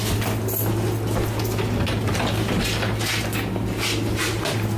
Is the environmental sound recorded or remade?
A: recorded